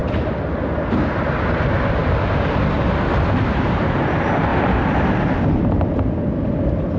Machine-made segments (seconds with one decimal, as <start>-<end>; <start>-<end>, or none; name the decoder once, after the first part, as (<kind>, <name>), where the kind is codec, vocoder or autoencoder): none